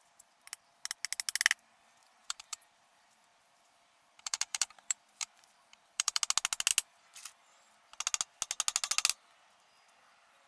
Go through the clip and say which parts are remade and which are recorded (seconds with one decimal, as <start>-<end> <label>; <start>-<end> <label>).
0.0-2.2 recorded; 2.2-6.2 remade; 6.2-10.5 recorded